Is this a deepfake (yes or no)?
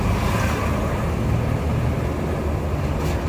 no